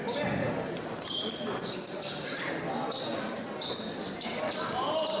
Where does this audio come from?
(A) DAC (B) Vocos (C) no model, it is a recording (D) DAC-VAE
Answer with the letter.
C